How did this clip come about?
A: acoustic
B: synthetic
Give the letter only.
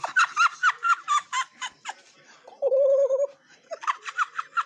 B